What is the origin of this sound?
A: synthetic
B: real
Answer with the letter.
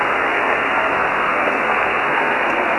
A